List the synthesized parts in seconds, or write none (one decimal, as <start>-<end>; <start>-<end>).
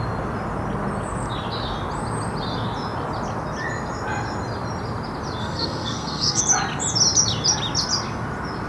5.4-6.4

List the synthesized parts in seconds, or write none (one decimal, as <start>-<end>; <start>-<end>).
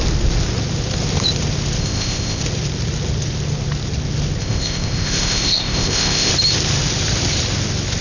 1.8-2.4; 4.4-6.3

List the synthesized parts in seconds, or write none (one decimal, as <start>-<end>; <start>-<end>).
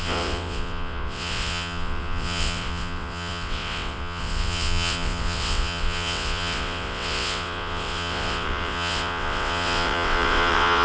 0.0-10.8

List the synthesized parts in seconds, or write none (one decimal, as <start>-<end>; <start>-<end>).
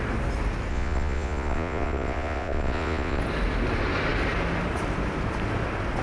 0.7-3.2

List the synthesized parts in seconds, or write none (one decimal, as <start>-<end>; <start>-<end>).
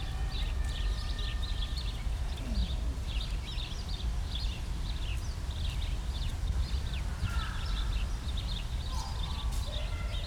2.6-3.1; 6.3-8.5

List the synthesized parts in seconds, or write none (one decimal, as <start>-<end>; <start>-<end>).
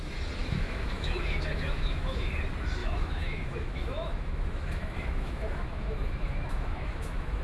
0.4-2.3; 2.8-7.4